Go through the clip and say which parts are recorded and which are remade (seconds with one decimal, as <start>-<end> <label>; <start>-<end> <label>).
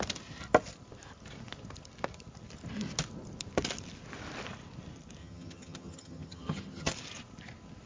0.0-5.2 recorded; 5.2-6.9 remade; 6.9-7.9 recorded